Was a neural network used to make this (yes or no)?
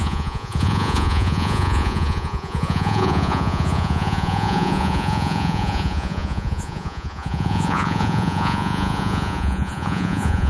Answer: yes